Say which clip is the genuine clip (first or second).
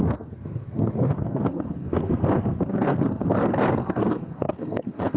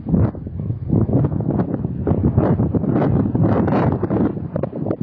second